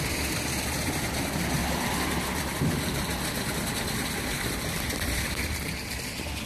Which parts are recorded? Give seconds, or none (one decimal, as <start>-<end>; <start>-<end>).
none